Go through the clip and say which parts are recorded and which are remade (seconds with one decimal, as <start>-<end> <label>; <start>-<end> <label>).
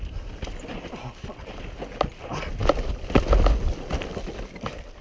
0.0-5.0 recorded